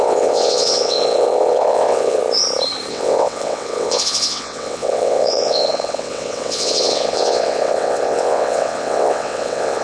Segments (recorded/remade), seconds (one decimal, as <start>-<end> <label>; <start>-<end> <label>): 0.0-2.2 remade; 2.2-2.9 recorded; 2.9-9.8 remade